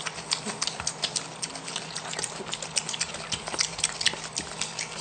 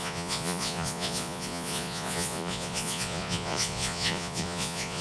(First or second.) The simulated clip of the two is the second